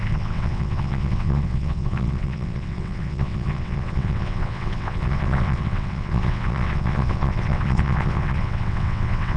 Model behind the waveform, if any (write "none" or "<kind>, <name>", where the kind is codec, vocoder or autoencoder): vocoder, WaveNeXt